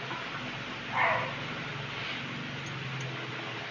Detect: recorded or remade recorded